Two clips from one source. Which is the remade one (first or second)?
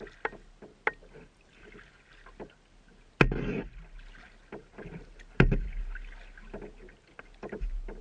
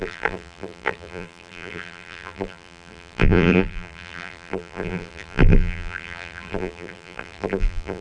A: second